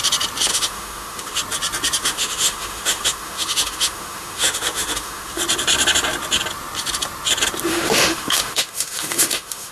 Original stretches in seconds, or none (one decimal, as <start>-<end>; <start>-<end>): 0.0-0.5; 1.4-2.0; 5.4-7.7